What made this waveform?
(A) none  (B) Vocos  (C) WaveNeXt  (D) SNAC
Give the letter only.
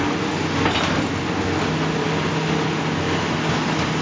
A